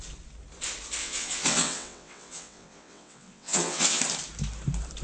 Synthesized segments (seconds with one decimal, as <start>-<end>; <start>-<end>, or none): 1.0-4.0